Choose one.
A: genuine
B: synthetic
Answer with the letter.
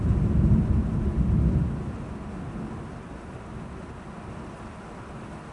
A